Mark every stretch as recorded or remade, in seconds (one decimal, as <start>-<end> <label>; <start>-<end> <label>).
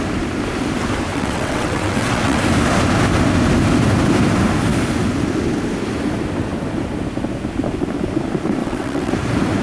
0.0-1.1 recorded; 1.1-2.4 remade; 2.4-8.6 recorded; 8.6-9.1 remade; 9.1-9.6 recorded